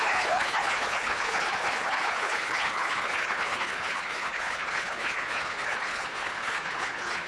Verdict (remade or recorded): remade